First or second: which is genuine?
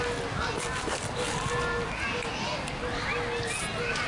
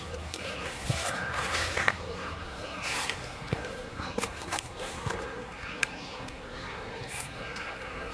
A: first